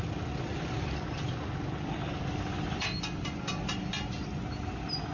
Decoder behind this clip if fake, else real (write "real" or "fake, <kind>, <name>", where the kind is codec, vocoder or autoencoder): real